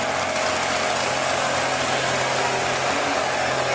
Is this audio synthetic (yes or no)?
no